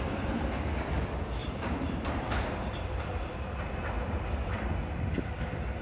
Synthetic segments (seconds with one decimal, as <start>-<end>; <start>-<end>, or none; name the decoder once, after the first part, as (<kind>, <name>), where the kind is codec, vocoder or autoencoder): 1.4-4.2 (vocoder, BigVGAN v2)